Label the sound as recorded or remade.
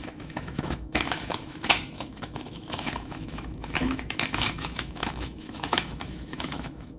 remade